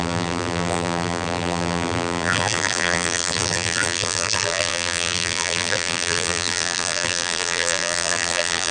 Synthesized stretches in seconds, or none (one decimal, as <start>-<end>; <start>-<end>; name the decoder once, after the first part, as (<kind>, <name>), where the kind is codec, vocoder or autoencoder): 0.0-8.7 (vocoder, BigVGAN v2)

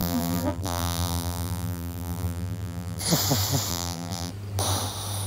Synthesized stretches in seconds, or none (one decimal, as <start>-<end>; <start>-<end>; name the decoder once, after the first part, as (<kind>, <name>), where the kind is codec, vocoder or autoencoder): 0.0-3.0 (vocoder, BigVGAN v2); 3.7-4.3

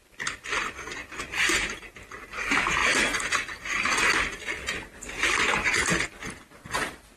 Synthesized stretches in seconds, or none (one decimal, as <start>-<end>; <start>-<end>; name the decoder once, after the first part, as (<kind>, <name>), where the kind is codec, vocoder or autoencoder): 2.8-3.9 (vocoder, BigVGAN v2)

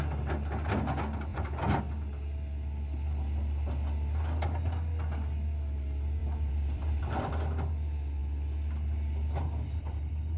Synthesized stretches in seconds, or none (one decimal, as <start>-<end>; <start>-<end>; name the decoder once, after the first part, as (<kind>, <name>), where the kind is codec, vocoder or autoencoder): 1.3-1.8 (vocoder, BigVGAN v2); 6.2-7.3

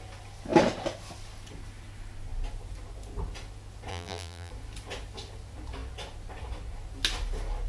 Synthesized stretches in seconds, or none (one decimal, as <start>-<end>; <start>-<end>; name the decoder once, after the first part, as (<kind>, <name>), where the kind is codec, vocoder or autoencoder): 3.9-4.5 (vocoder, BigVGAN v2)

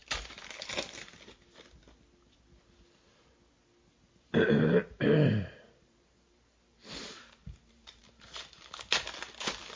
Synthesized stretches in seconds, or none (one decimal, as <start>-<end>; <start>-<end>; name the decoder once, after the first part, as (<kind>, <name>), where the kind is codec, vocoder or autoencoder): 3.9-8.9 (vocoder, BigVGAN v2)

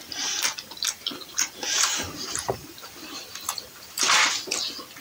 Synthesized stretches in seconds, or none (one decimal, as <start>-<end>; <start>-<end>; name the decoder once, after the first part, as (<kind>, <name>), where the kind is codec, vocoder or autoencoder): 1.3-4.3 (vocoder, BigVGAN v2)

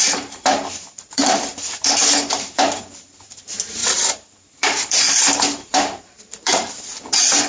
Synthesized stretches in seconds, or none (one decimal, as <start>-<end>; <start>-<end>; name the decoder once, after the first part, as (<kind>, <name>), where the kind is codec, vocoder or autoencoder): 0.0-7.5 (vocoder, BigVGAN v2)